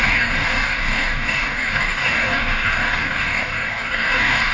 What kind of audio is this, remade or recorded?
remade